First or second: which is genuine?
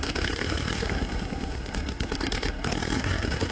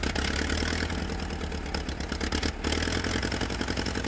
second